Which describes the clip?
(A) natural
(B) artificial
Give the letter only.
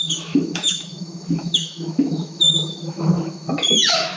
B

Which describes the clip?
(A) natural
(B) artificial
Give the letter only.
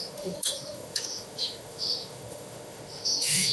B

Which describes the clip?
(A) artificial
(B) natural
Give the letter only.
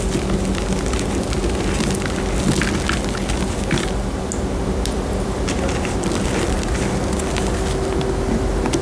B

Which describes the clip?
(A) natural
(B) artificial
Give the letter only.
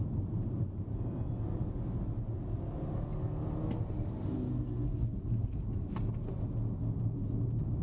A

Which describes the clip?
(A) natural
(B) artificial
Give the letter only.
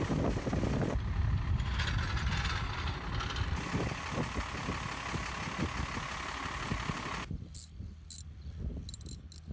A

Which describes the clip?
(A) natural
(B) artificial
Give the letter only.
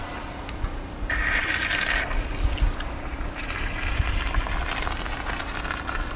A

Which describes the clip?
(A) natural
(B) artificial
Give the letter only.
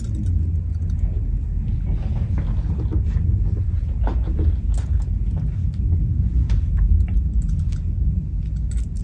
A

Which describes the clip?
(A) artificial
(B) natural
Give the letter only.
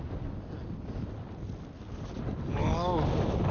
B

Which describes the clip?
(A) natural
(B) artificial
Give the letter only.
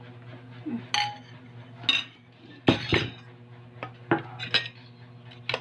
A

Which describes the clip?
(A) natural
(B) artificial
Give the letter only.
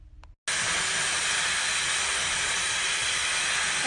A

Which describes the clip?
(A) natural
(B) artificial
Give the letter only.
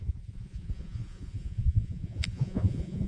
B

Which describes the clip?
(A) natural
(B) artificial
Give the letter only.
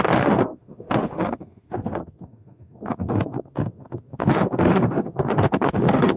B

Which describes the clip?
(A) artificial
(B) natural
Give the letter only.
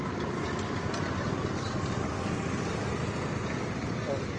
B